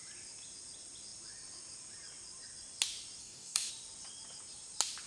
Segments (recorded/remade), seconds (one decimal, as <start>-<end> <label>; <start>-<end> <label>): 0.0-3.2 recorded; 3.2-3.7 remade; 3.7-5.1 recorded